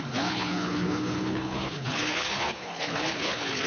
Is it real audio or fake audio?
fake